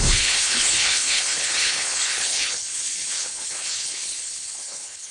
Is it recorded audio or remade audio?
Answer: remade